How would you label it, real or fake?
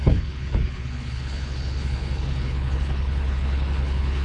fake